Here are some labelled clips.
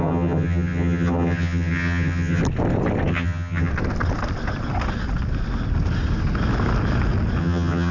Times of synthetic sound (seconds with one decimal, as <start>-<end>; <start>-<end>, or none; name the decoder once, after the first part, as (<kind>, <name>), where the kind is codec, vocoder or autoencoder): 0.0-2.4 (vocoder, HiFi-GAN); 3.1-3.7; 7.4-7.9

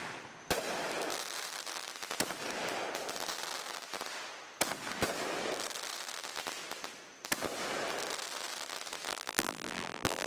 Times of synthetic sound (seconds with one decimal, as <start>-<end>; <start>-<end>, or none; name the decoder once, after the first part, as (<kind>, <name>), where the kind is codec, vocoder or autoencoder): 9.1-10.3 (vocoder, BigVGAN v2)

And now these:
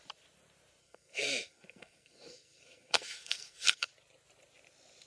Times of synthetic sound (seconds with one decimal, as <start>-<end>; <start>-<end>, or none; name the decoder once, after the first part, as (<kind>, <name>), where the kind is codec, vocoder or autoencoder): 0.8-3.9 (codec, SNAC)

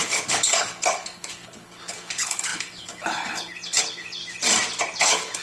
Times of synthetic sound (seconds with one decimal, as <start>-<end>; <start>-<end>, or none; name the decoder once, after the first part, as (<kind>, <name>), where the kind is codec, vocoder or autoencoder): 0.0-4.2 (codec, HILCodec); 5.0-5.4

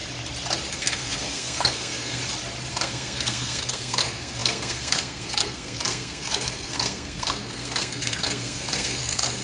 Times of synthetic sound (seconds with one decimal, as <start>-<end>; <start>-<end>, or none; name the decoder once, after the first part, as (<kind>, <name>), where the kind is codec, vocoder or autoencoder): 0.7-2.2 (codec, SNAC); 2.7-9.4